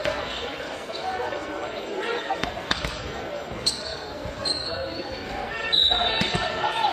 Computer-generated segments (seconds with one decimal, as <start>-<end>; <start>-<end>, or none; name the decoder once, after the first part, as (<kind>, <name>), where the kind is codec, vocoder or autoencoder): 0.0-6.9 (codec, SNAC)